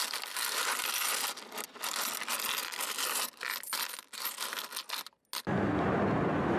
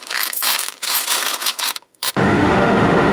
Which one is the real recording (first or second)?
first